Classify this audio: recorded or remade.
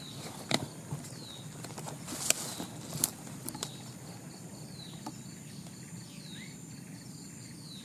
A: recorded